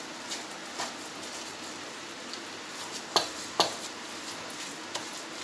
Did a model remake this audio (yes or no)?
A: no